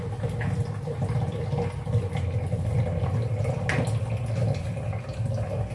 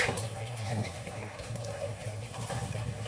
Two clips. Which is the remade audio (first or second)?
second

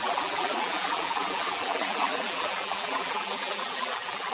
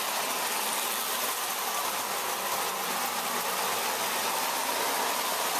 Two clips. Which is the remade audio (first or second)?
first